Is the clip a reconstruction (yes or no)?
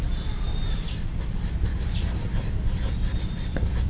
yes